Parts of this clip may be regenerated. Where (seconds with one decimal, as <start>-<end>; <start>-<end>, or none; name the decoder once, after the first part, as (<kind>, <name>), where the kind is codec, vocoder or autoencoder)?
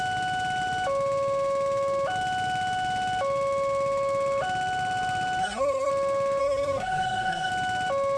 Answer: 5.4-5.9 (codec, SNAC); 6.4-7.5